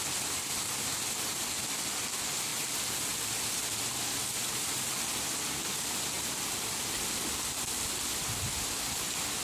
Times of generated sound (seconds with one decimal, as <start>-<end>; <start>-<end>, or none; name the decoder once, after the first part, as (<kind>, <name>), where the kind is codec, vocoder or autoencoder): 2.5-3.8 (vocoder, BigVGAN v2); 4.4-5.0